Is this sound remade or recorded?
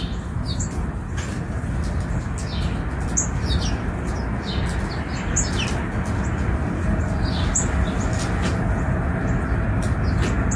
recorded